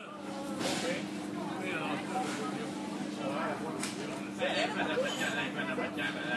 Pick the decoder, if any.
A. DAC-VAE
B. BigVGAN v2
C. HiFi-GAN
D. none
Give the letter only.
D